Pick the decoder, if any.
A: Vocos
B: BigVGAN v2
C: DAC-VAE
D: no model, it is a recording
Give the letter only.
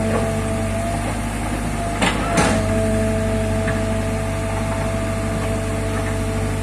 D